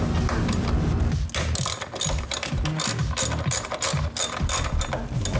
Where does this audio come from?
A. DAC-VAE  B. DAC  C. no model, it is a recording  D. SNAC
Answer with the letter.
C